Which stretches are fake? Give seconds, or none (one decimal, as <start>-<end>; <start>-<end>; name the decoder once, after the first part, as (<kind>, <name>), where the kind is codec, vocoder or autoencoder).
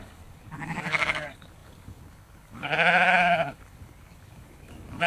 0.0-5.1 (codec, DAC)